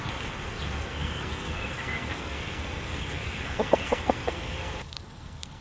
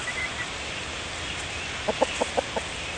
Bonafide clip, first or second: second